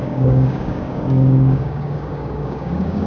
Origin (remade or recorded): remade